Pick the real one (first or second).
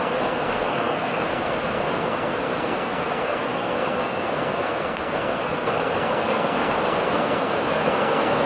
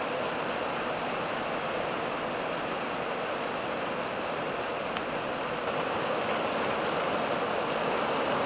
second